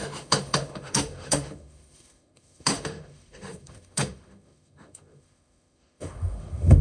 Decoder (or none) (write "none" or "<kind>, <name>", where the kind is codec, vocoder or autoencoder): autoencoder, DAC-VAE